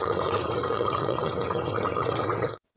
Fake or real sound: fake